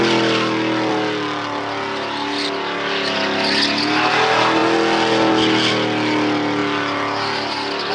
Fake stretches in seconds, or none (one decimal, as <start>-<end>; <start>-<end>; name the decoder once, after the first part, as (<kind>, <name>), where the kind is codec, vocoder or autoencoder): none